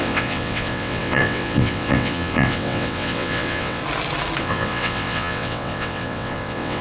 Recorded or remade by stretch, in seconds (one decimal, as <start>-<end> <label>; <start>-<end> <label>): 0.0-3.8 remade; 3.8-4.4 recorded; 4.4-6.8 remade